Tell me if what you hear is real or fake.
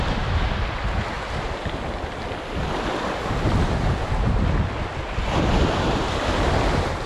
real